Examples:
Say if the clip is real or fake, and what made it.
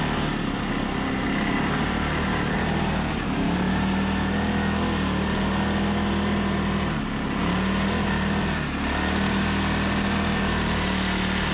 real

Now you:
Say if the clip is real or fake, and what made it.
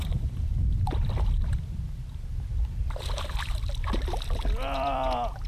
fake, vocoder, BigVGAN v2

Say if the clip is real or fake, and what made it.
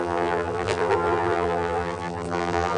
fake, vocoder, BigVGAN v2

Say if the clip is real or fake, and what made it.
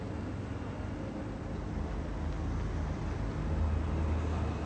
real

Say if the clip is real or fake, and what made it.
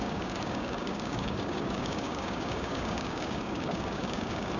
fake, codec, DAC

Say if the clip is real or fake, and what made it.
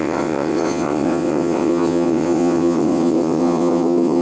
fake, vocoder, WaveNeXt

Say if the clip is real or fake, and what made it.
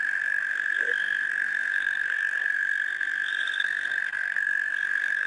fake, codec, SNAC